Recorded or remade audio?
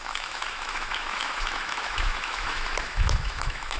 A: remade